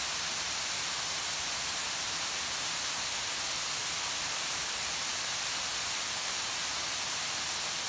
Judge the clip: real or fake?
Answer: real